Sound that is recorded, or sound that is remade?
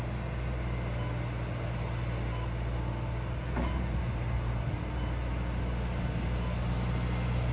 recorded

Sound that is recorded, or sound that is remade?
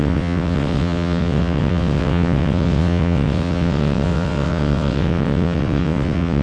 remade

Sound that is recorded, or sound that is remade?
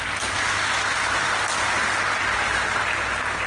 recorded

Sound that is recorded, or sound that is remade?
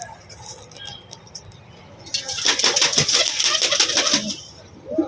recorded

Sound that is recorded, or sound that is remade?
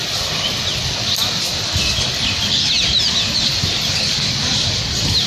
recorded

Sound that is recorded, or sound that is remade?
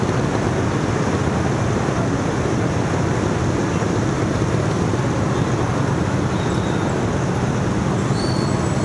recorded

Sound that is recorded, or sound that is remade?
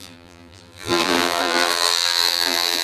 remade